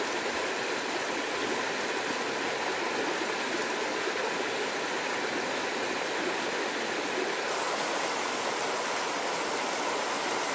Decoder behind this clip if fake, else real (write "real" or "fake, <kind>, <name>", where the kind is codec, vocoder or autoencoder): real